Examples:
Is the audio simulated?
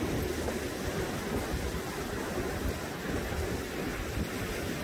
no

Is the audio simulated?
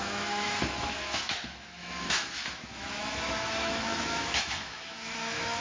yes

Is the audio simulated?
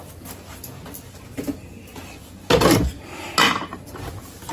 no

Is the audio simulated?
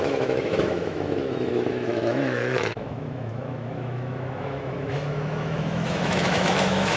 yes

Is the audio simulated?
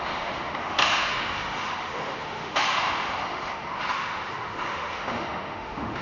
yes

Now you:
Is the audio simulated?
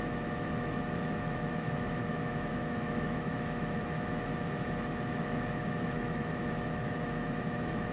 yes